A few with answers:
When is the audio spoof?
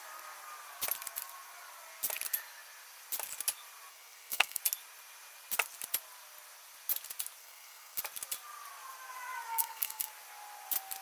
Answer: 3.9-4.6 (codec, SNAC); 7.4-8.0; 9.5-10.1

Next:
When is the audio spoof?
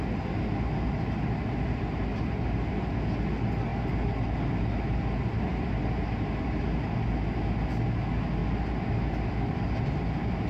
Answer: none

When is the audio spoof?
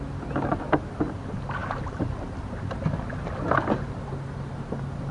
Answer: none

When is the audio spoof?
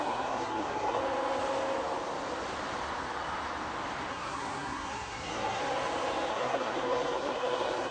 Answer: 0.0-1.0 (codec, SNAC); 4.1-5.6; 6.3-7.9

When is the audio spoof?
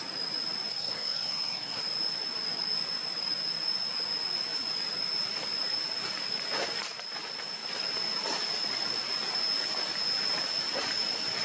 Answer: 0.7-1.8 (codec, SNAC)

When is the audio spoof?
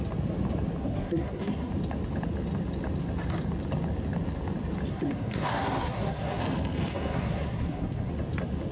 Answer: 0.8-1.7 (codec, SNAC); 4.9-6.4; 6.9-8.1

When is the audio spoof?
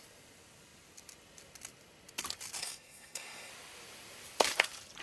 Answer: 2.6-3.5 (codec, SNAC)